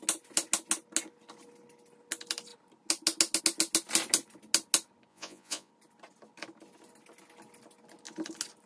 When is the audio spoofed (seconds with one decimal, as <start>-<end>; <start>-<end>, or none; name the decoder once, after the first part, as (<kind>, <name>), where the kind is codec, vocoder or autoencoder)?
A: 5.1-5.7 (vocoder, Vocos)